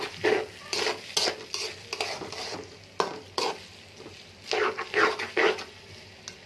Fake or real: real